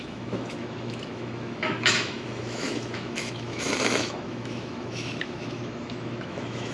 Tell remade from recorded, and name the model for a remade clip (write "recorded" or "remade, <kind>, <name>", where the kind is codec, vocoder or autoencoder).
remade, autoencoder, DAC-VAE